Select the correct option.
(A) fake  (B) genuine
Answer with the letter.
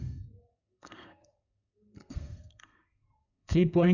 A